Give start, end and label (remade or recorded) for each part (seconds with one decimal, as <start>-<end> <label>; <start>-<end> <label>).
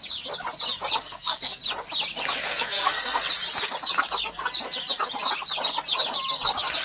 0.0-1.0 recorded; 1.0-1.6 remade; 1.6-2.5 recorded; 2.5-3.2 remade; 3.2-6.8 recorded